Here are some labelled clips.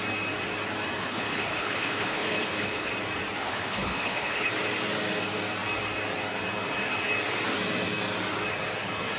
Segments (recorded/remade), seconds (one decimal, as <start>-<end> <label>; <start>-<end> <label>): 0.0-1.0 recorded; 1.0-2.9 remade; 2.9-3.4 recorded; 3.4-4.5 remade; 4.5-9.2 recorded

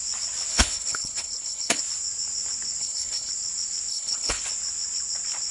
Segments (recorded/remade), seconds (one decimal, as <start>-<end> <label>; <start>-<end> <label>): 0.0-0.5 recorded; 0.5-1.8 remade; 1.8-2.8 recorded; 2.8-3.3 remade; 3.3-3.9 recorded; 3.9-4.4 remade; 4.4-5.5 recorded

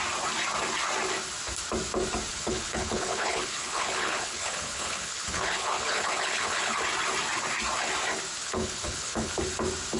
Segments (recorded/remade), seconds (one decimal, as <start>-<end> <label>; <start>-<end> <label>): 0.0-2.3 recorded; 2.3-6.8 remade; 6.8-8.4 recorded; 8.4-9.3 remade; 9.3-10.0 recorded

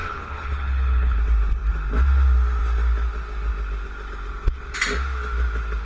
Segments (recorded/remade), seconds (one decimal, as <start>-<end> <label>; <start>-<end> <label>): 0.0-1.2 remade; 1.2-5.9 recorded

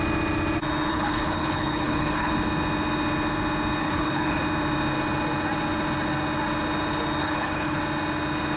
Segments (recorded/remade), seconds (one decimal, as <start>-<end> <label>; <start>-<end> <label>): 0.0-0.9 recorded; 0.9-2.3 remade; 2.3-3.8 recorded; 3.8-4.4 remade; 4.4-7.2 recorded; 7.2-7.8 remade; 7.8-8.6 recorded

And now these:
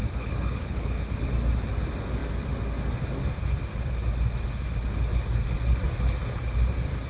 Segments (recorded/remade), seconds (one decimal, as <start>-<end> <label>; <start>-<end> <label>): 0.0-1.1 remade; 1.1-7.1 recorded